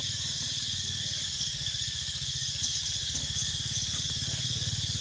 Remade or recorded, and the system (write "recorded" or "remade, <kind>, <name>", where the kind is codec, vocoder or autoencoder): remade, codec, DAC